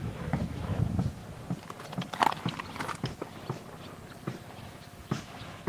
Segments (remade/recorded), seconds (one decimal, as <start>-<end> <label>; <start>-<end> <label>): 0.0-1.2 remade; 1.2-4.6 recorded; 4.6-5.7 remade